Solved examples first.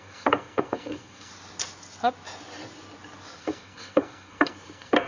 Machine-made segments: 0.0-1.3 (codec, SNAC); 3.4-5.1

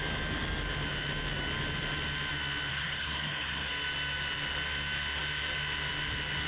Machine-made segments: 2.7-3.7 (codec, SNAC)

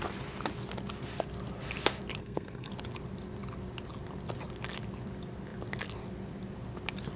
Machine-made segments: 2.2-2.7 (codec, SNAC)